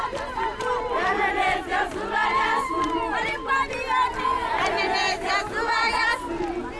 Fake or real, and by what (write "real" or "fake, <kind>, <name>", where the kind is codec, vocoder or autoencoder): real